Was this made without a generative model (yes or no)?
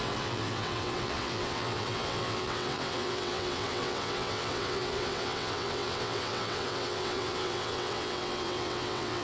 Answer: no